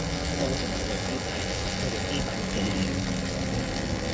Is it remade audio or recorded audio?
recorded